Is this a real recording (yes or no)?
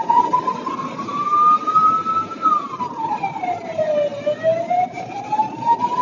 no